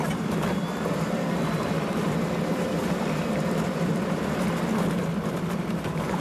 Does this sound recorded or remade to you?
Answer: remade